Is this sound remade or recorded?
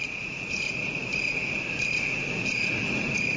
remade